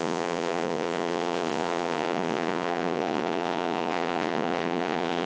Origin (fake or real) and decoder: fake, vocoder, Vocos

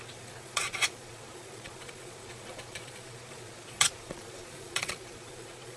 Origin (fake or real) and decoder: fake, vocoder, Vocos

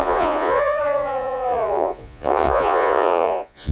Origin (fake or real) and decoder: fake, vocoder, Vocos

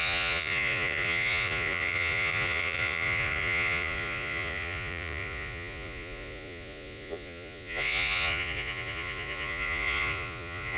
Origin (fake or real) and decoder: fake, vocoder, Vocos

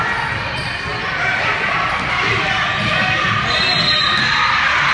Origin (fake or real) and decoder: real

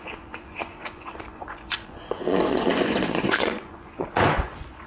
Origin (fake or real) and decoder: fake, vocoder, Vocos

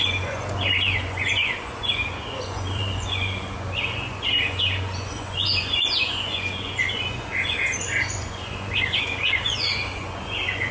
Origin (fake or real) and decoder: fake, vocoder, Vocos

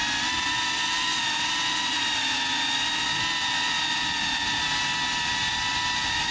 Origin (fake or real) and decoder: real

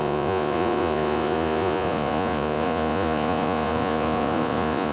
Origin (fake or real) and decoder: fake, vocoder, Vocos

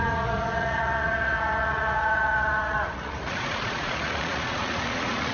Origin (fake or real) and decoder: fake, vocoder, Vocos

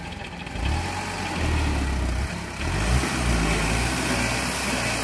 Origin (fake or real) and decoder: real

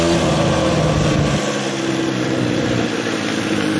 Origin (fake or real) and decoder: real